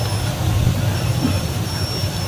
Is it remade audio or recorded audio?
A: recorded